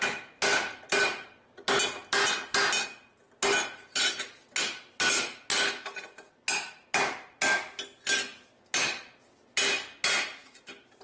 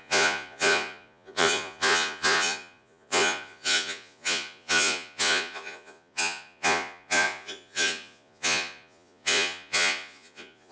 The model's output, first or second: second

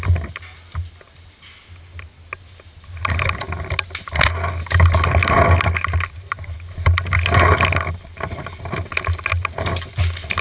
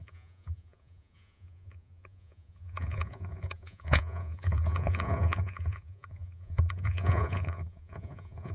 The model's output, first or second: second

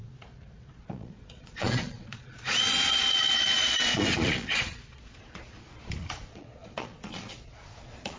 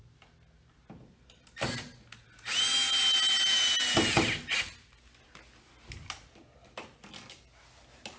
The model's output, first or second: first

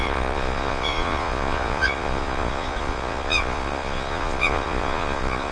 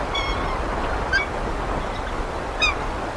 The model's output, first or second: first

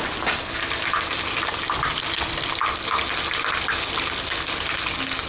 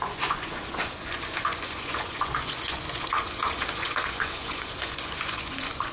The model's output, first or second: second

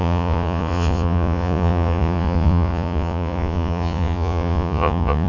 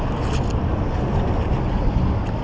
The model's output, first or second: first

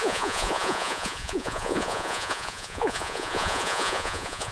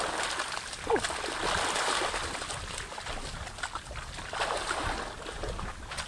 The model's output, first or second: first